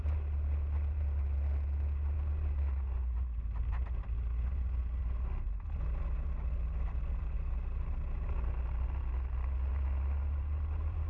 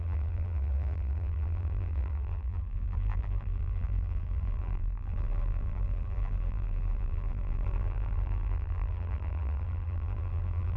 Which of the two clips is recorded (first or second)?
first